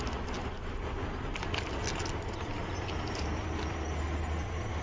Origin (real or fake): real